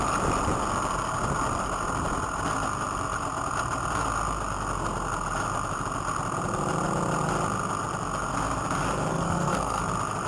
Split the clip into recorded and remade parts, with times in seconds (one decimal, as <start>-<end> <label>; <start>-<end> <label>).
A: 0.0-9.1 recorded; 9.1-9.8 remade; 9.8-10.3 recorded